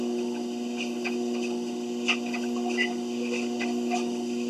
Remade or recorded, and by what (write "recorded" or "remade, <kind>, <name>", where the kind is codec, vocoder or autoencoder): recorded